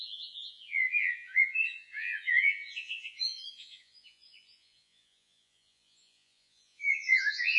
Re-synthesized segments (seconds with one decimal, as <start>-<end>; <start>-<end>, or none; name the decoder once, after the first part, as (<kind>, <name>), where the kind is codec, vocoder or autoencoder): 0.0-7.6 (vocoder, Vocos)